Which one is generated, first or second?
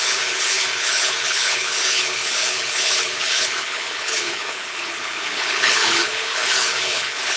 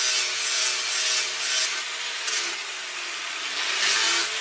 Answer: first